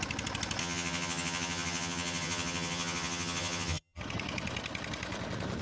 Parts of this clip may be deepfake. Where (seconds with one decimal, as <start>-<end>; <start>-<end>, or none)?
0.6-4.0